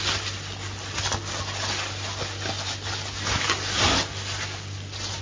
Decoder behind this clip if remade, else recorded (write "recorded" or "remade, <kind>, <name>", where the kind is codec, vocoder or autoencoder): recorded